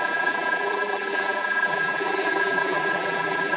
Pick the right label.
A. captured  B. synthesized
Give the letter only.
B